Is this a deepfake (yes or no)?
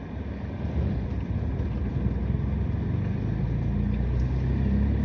no